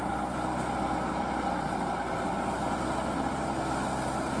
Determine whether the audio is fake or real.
real